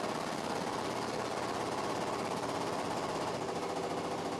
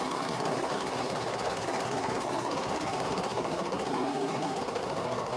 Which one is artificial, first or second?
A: second